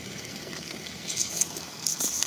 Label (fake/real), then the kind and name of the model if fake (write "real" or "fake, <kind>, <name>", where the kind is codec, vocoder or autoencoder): fake, codec, SNAC